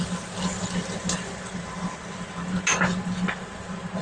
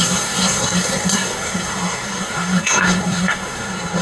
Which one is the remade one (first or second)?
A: second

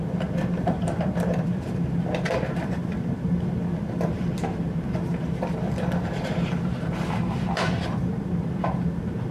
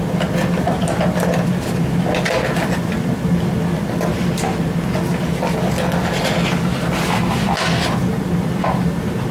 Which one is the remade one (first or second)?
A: first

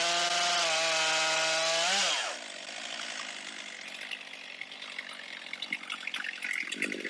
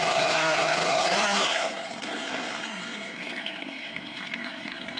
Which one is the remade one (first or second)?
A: second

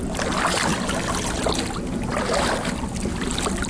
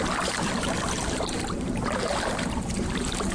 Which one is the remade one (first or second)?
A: second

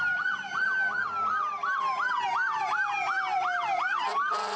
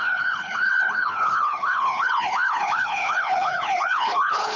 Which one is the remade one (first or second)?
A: second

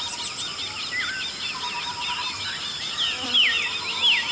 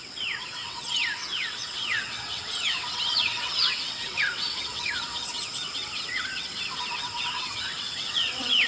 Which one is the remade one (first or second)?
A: second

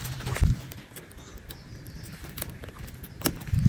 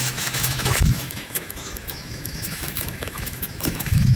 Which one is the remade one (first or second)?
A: second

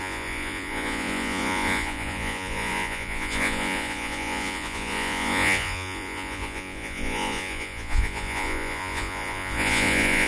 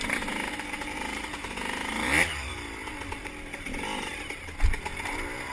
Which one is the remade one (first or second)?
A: first